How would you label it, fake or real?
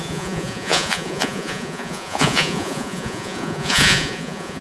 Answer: fake